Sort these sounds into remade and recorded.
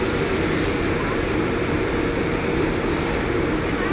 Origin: remade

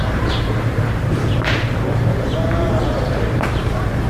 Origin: remade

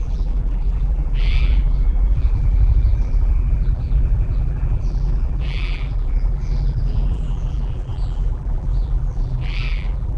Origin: remade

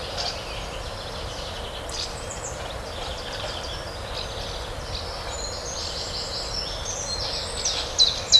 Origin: recorded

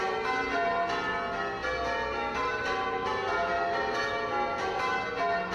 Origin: recorded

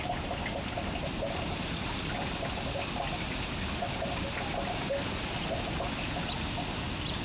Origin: recorded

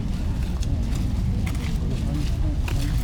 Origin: recorded